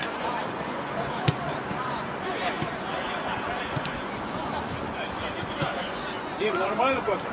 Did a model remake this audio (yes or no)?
yes